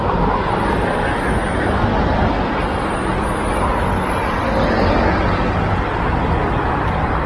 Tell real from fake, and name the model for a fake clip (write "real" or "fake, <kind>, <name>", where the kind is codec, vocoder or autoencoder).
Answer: real